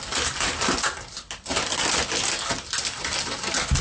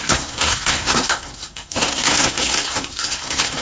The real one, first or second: first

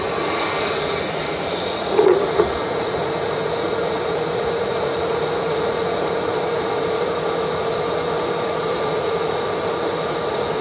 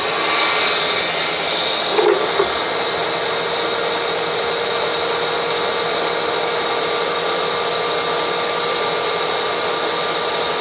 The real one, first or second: second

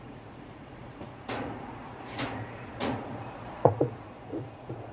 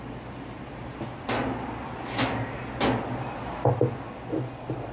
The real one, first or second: second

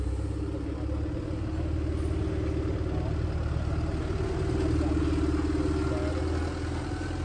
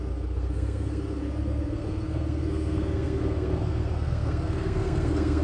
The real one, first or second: first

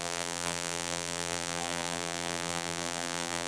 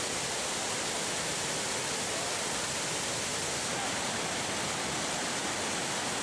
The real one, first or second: second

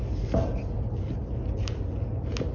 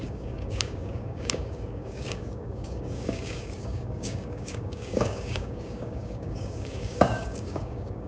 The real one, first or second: first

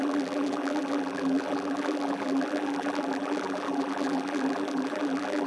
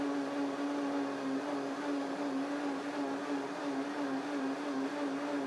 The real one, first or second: second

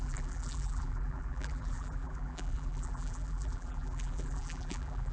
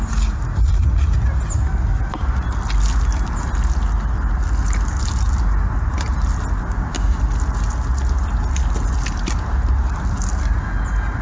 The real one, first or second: second